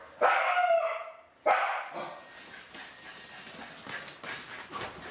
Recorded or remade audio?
recorded